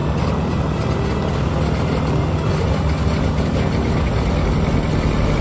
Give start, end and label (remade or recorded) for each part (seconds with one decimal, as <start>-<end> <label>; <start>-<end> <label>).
0.0-5.4 recorded